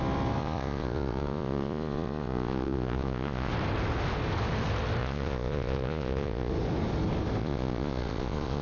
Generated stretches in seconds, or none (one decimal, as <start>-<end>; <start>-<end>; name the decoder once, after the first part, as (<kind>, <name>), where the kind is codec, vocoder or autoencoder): 0.4-3.5 (vocoder, Vocos); 5.0-6.5; 7.4-8.6